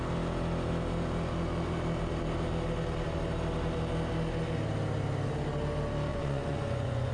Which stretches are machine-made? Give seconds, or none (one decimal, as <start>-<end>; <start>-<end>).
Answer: 6.1-7.1